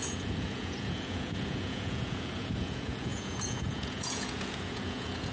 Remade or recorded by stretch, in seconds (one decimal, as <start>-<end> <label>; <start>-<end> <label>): 0.0-5.3 remade